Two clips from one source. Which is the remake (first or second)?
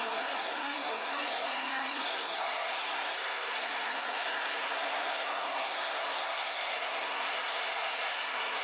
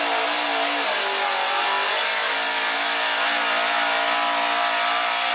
first